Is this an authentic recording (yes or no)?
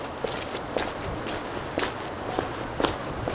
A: yes